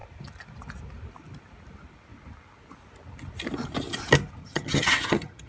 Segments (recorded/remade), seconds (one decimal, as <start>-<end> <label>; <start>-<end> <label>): 0.0-4.4 recorded; 4.4-5.5 remade